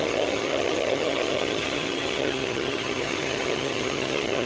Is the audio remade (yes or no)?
yes